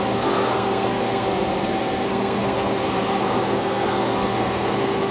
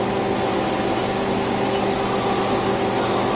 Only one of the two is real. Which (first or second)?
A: second